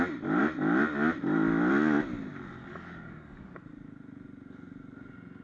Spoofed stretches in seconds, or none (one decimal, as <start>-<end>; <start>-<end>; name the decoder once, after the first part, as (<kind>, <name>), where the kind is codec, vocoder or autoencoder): 2.6-3.6 (codec, DAC)

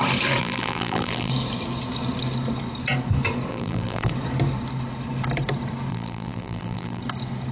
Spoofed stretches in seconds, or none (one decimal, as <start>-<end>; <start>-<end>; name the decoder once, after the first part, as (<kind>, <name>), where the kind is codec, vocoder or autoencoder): 0.4-1.3 (vocoder, BigVGAN v2); 3.5-4.1; 5.9-7.0

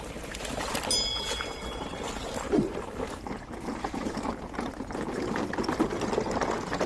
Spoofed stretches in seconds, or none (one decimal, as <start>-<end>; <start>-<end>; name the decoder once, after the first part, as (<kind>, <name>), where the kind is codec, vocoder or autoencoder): none

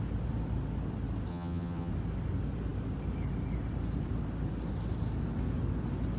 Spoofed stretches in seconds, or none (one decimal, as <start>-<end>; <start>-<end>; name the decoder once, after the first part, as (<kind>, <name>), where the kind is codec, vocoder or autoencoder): 1.3-1.9 (vocoder, HiFi-GAN)

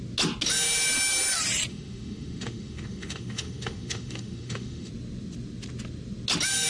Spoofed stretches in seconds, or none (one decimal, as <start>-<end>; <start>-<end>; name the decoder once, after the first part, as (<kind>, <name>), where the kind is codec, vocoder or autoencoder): 1.7-4.9 (autoencoder, DAC-VAE)